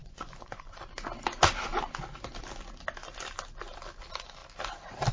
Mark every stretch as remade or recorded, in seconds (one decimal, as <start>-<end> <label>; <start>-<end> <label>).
0.0-0.8 remade; 0.8-5.1 recorded